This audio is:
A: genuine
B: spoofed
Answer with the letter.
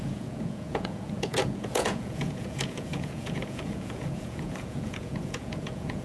B